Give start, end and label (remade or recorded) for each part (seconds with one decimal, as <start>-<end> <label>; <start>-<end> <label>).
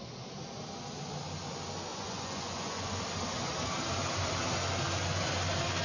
0.0-1.9 recorded; 1.9-3.0 remade; 3.0-5.8 recorded